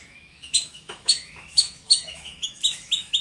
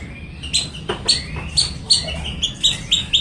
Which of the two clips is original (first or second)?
second